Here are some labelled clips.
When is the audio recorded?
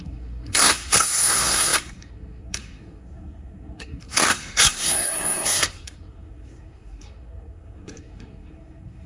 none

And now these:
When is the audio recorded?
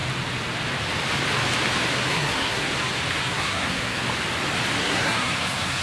0.0-2.1; 2.7-3.2; 4.0-4.8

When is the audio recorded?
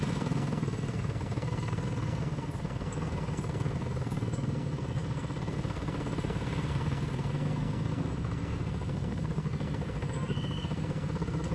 none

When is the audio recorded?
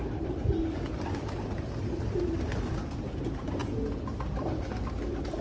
0.0-5.4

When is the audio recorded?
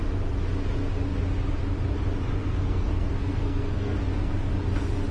0.0-2.4; 4.5-5.1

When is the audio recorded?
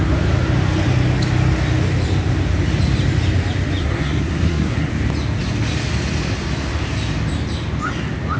0.0-3.8; 4.9-8.4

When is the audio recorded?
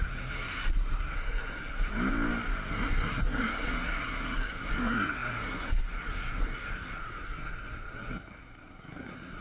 1.9-2.7